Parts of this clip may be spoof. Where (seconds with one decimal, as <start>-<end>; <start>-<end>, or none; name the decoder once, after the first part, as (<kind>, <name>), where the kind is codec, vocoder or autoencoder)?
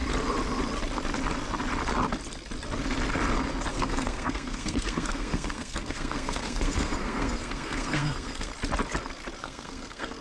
3.7-8.5 (codec, SNAC); 9.4-10.2